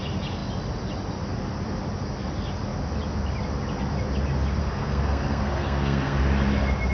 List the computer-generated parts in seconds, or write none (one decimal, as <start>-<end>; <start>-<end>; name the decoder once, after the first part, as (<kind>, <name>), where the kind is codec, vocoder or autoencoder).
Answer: 4.6-6.2 (codec, SNAC)